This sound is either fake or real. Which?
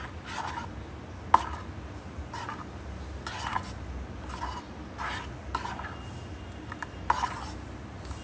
real